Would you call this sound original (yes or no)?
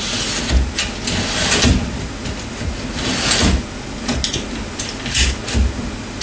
yes